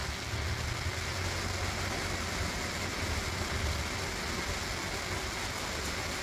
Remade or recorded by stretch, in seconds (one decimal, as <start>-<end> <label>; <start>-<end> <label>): 0.0-6.2 recorded